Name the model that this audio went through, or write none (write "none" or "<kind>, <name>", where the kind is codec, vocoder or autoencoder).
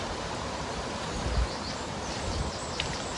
none